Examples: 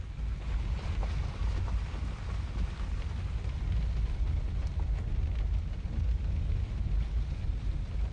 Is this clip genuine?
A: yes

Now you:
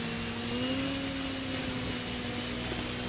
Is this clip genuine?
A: yes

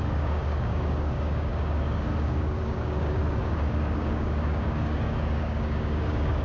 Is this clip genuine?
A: no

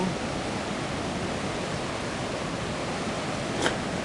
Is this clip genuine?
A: yes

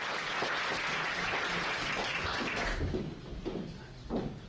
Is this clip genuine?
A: yes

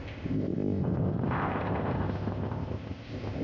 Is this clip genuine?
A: no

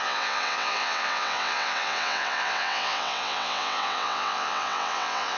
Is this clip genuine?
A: no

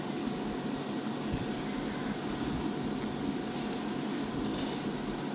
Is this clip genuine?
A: yes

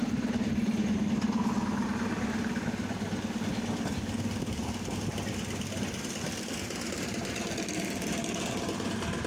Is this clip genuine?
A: yes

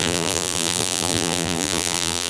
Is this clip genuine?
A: no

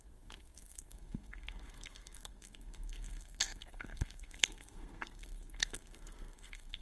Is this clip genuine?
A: no